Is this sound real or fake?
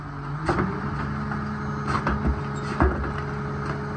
real